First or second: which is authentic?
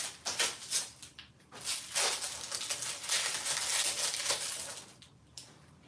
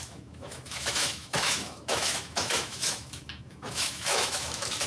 first